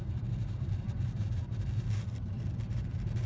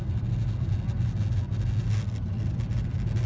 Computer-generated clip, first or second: first